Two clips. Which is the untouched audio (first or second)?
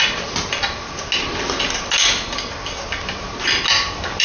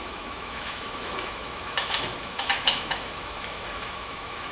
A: first